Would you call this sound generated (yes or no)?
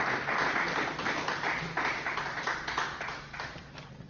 no